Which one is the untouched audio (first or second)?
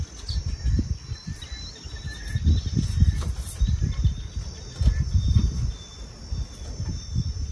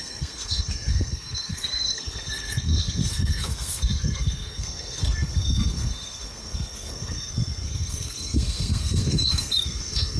first